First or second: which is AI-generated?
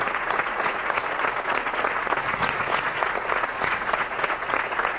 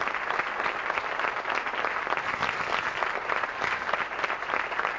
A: first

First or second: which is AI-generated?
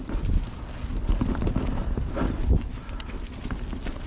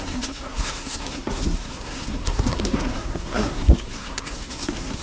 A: second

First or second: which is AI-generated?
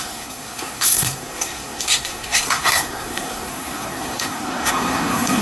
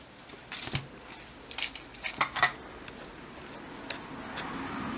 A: first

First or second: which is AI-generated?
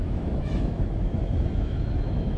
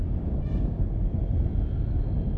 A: first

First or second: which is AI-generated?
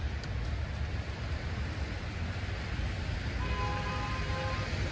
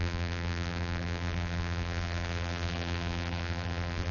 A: second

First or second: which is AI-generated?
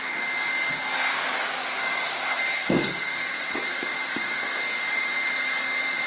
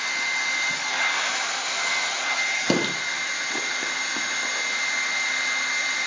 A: first